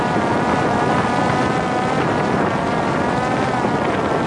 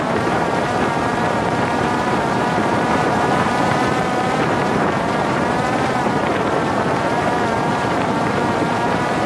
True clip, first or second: first